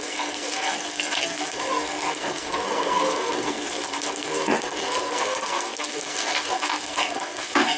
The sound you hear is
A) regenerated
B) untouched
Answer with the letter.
A